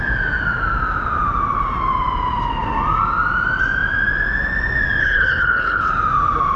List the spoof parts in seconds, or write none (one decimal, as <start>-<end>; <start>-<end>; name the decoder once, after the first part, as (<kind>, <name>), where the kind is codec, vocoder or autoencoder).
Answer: 5.0-5.9 (codec, HILCodec)